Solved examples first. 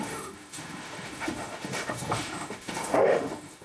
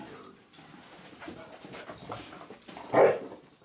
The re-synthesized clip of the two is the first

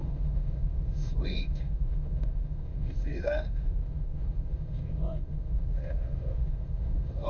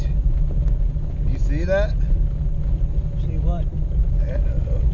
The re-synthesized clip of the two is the first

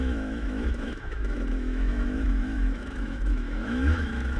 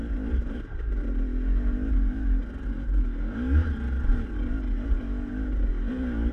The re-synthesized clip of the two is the first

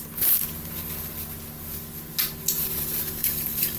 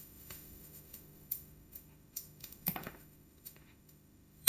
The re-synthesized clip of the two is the second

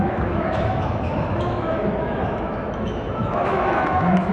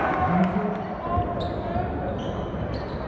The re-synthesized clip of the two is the first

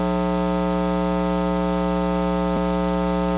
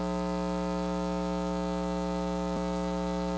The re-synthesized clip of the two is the second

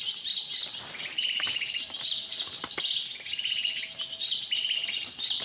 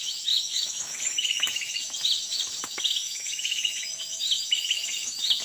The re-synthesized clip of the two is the second